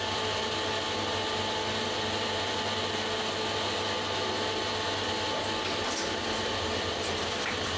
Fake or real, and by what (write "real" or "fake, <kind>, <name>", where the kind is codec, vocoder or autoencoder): real